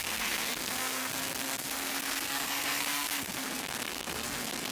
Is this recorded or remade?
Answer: remade